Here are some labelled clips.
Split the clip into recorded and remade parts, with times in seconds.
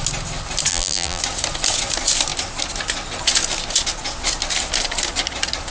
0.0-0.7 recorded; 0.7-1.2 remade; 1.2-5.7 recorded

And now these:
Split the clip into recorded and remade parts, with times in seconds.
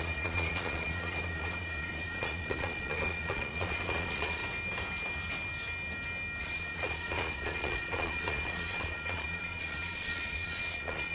0.0-4.4 remade; 4.4-6.4 recorded; 6.4-11.1 remade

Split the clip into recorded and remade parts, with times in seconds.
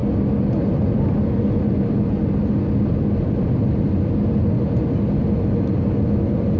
0.0-6.6 recorded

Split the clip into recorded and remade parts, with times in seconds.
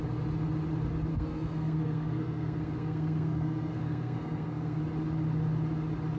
0.0-1.1 recorded; 1.1-4.8 remade; 4.8-6.2 recorded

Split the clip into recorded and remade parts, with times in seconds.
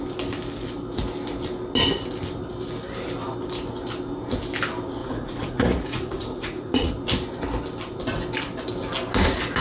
0.0-5.0 recorded; 5.0-6.9 remade; 6.9-9.6 recorded